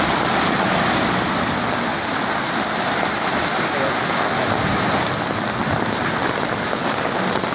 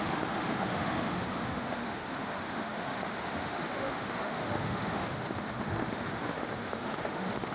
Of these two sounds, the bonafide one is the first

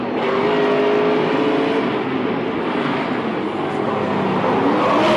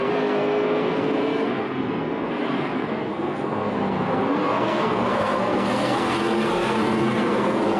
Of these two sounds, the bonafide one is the first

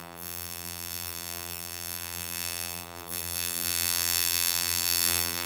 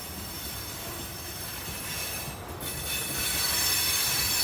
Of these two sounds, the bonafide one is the second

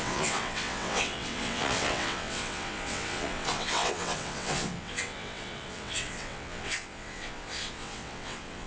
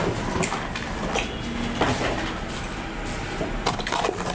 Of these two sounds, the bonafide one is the second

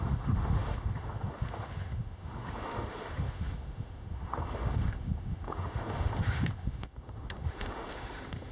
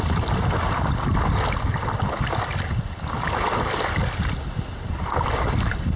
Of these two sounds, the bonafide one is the second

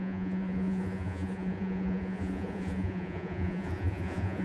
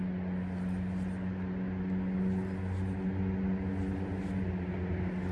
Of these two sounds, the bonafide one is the second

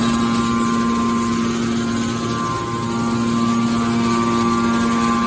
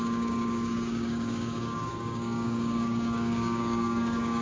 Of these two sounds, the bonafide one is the first